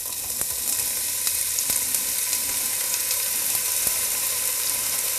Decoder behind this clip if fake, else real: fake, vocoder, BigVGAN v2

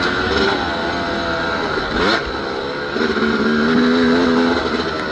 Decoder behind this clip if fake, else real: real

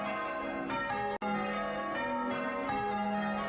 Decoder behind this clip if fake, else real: real